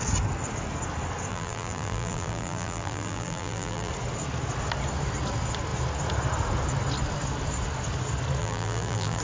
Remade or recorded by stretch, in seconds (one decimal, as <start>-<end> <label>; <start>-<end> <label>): 0.0-1.3 recorded; 1.3-3.9 remade; 3.9-8.4 recorded; 8.4-9.2 remade